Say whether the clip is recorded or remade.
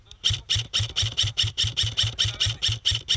remade